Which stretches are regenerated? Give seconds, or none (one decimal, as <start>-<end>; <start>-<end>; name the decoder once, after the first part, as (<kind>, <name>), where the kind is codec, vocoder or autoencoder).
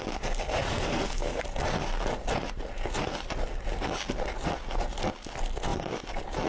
0.7-1.4 (codec, SNAC)